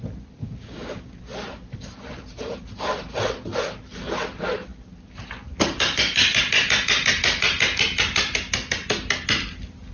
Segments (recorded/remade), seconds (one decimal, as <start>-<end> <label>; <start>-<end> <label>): 0.0-0.4 recorded; 0.4-1.1 remade; 1.1-9.9 recorded

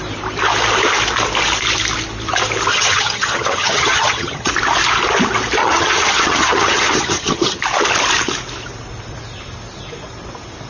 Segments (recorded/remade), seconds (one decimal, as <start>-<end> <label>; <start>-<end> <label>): 0.0-2.7 recorded; 2.7-4.5 remade; 4.5-5.6 recorded; 5.6-7.6 remade; 7.6-10.7 recorded

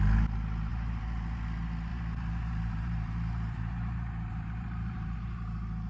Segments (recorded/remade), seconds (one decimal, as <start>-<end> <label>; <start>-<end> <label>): 0.0-0.7 recorded; 0.7-1.4 remade; 1.4-1.9 recorded; 1.9-5.4 remade; 5.4-5.9 recorded

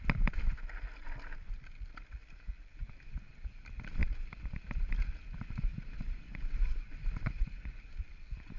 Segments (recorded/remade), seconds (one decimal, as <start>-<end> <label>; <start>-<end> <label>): 0.0-2.2 recorded; 2.2-3.2 remade; 3.2-5.7 recorded; 5.7-6.4 remade; 6.4-8.6 recorded

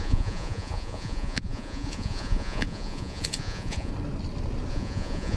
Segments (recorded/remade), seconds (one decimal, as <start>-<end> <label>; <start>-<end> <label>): 0.0-3.9 remade; 3.9-4.7 recorded; 4.7-5.4 remade

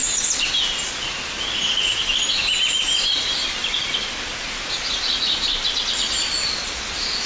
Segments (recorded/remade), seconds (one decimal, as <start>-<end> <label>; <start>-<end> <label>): 0.0-7.3 recorded